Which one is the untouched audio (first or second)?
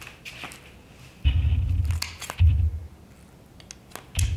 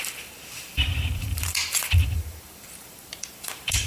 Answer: first